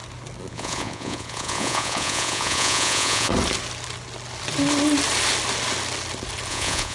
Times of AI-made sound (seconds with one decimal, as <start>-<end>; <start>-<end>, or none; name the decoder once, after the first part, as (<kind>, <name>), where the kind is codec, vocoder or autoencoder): 0.5-3.3 (vocoder, Vocos); 6.5-6.9